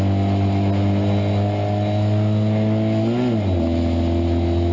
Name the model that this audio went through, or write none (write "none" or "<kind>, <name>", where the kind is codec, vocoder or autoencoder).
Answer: none